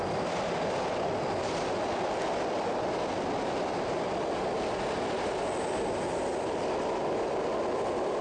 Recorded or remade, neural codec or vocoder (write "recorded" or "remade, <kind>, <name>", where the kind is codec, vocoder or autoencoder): recorded